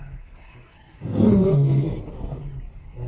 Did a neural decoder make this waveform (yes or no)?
yes